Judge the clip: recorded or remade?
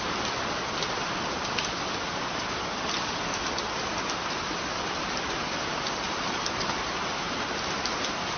recorded